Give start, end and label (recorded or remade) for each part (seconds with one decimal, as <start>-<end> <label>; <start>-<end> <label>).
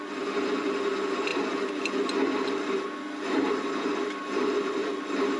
0.0-5.4 recorded